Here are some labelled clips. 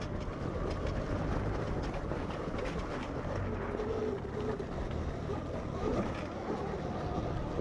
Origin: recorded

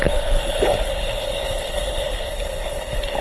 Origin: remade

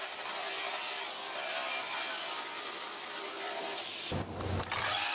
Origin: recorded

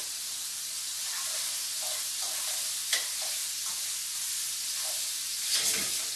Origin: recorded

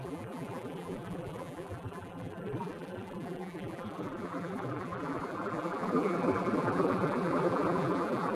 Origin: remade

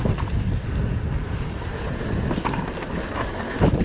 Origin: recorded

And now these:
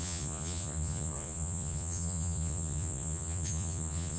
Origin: remade